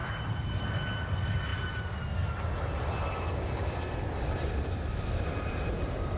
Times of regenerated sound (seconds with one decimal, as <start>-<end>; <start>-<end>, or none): none